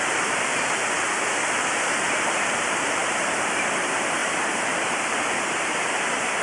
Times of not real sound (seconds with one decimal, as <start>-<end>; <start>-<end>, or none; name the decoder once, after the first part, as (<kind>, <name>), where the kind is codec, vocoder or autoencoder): 0.0-0.5 (vocoder, BigVGAN v2); 2.4-6.4